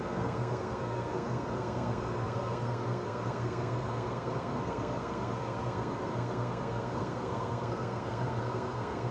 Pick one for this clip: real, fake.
fake